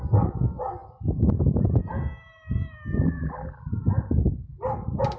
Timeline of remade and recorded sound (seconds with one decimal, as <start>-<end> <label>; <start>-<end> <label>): 0.0-3.0 recorded; 3.0-3.7 remade; 3.7-5.2 recorded